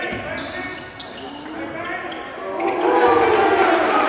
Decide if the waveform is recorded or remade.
recorded